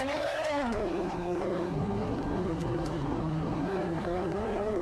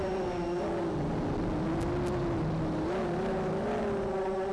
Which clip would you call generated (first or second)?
first